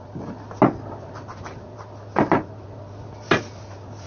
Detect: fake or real real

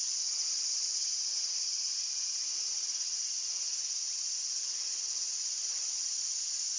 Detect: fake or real real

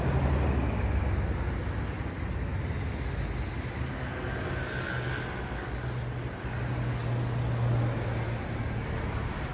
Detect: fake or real real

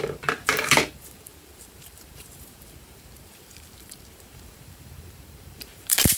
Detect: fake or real fake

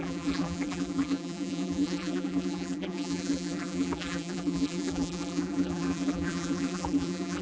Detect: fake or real fake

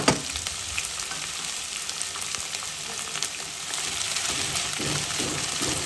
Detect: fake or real real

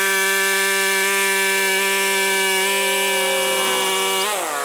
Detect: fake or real real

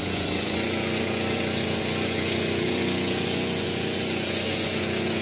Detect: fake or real fake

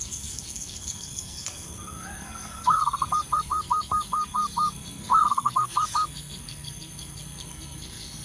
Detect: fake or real fake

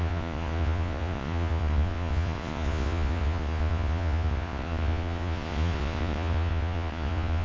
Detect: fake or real fake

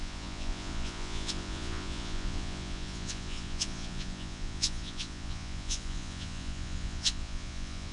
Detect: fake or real fake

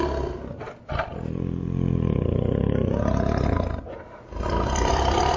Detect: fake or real real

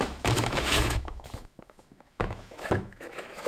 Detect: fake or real fake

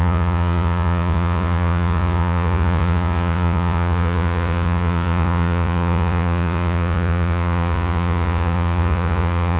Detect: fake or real fake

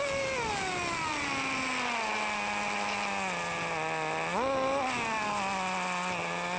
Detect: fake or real real